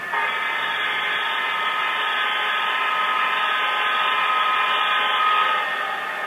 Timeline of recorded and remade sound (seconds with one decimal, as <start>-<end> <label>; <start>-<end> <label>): 0.0-6.3 recorded